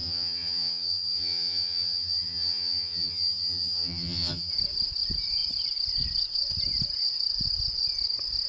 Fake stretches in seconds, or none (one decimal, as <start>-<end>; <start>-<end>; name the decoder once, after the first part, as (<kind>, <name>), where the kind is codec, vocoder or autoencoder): 0.0-4.5 (vocoder, HiFi-GAN)